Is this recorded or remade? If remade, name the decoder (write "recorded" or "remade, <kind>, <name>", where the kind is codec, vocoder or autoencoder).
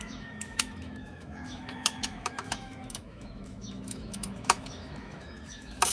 remade, autoencoder, DAC-VAE